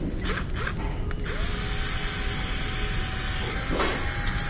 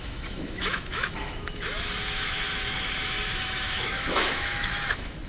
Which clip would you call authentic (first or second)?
first